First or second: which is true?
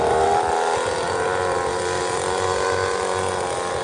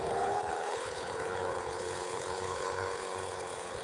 first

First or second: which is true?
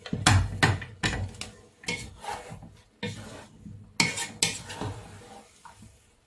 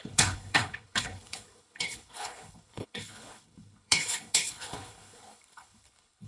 first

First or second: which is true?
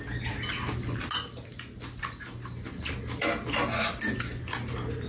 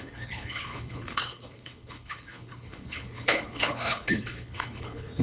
first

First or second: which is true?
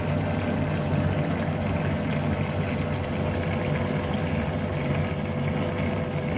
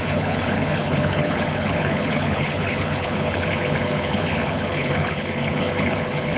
first